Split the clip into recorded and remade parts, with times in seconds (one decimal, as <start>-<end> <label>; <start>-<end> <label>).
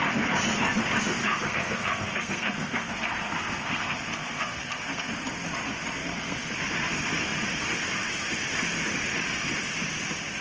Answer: 0.0-1.2 recorded; 1.2-5.1 remade; 5.1-6.0 recorded; 6.0-6.5 remade; 6.5-10.4 recorded